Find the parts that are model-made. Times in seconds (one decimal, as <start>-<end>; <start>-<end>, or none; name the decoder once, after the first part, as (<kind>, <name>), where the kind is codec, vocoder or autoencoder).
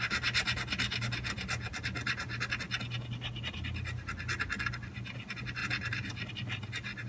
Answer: 5.6-6.3 (vocoder, BigVGAN v2)